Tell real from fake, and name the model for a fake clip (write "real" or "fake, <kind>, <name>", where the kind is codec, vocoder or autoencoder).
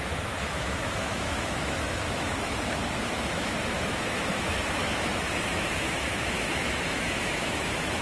fake, autoencoder, DAC-VAE